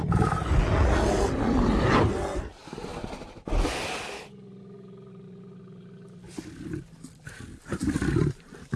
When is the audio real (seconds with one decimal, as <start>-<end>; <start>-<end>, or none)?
0.0-8.8